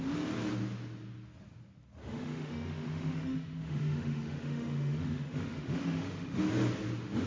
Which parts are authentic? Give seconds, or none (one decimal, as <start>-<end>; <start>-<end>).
0.0-2.0; 6.4-7.3